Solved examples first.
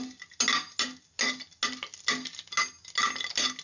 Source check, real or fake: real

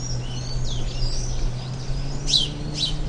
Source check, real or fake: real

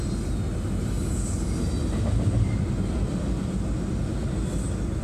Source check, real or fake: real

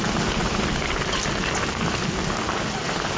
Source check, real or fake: real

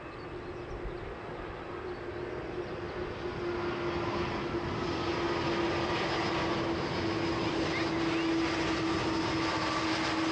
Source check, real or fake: real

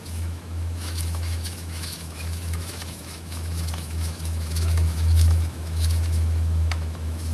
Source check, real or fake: fake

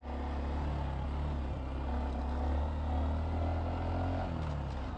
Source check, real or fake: real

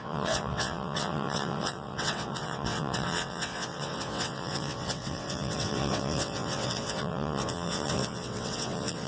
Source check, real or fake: fake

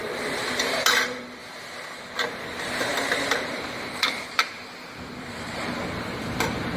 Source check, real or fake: fake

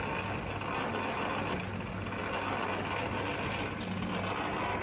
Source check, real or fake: real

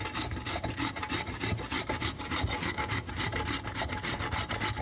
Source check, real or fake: real